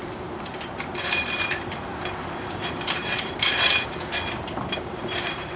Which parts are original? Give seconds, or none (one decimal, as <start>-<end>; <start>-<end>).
none